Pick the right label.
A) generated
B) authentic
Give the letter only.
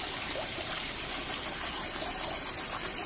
B